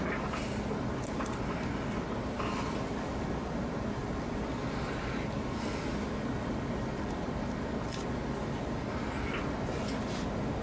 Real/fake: real